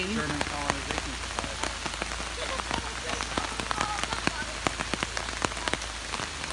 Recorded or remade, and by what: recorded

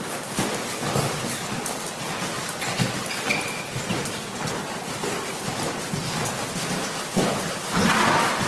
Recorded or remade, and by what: recorded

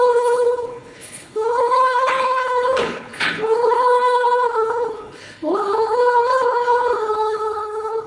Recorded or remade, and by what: remade, codec, HILCodec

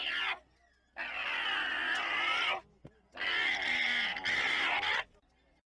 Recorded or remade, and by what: recorded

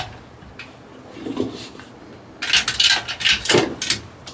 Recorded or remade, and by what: recorded